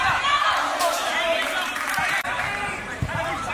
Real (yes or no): no